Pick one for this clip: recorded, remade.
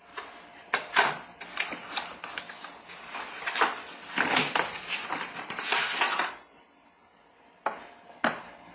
recorded